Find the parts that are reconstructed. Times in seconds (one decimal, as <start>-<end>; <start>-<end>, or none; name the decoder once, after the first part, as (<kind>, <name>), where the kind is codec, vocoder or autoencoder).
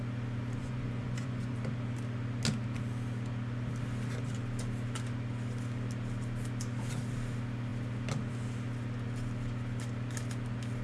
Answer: 0.6-1.5 (vocoder, Vocos)